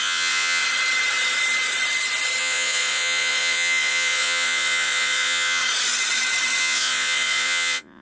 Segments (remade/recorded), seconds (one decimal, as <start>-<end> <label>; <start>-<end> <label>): 0.0-0.6 remade; 0.6-2.4 recorded; 2.4-5.6 remade; 5.6-6.6 recorded; 6.6-8.0 remade